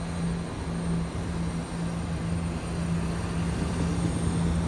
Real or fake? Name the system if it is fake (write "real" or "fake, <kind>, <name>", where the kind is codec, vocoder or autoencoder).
real